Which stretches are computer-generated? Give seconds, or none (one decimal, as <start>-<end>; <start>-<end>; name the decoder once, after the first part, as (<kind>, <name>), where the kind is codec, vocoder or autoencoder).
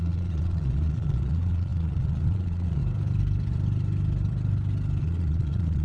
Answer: 0.0-2.8 (vocoder, Vocos); 5.0-5.8